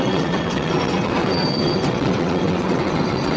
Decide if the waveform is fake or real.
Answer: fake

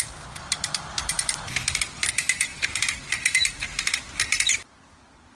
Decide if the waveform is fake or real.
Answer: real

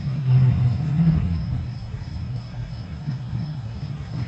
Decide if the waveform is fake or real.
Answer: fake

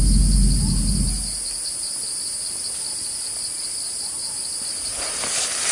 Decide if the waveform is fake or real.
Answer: real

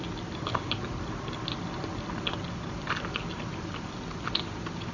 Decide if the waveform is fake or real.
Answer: real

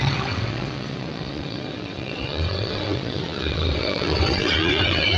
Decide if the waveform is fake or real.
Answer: fake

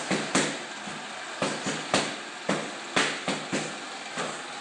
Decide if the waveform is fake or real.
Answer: real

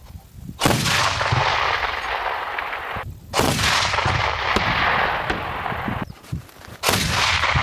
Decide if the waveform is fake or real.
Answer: real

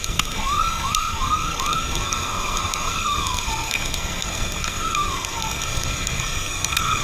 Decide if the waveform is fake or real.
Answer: fake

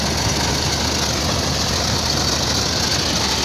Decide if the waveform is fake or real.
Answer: real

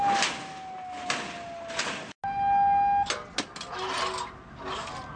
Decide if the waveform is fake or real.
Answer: real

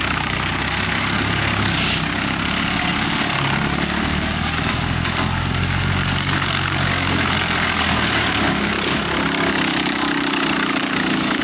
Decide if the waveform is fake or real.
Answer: fake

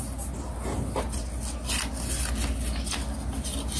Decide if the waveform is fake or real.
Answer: real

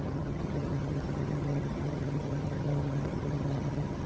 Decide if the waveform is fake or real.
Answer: fake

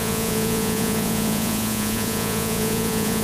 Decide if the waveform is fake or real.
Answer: fake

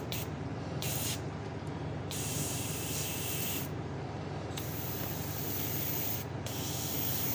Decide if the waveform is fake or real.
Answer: fake